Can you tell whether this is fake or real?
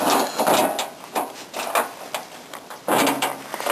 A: real